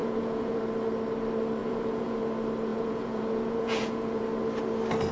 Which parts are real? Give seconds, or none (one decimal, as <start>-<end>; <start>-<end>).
0.6-1.6; 2.2-2.7; 4.2-5.1